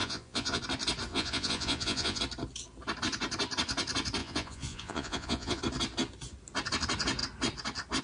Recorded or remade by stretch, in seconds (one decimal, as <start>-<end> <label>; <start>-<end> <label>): 0.0-0.6 remade; 0.6-1.1 recorded; 1.1-2.2 remade; 2.2-4.2 recorded; 4.2-5.6 remade; 5.6-8.0 recorded